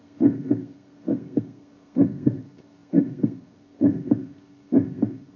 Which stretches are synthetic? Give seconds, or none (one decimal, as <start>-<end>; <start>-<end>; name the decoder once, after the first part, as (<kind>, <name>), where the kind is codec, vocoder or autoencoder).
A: 0.0-5.4 (codec, SNAC)